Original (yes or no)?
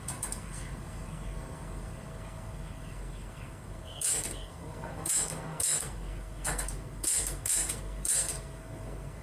no